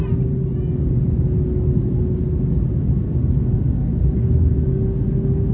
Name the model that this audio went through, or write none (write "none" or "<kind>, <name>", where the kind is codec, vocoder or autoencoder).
none